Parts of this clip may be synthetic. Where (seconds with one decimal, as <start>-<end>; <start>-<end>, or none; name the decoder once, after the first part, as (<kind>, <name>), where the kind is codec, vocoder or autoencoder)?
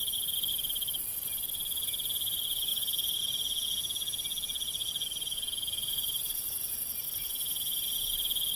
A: none